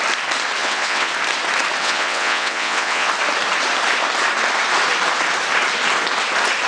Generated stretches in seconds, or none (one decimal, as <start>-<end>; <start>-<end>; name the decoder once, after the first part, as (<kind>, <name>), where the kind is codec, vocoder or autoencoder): 0.6-1.1 (vocoder, WaveNeXt); 1.8-3.1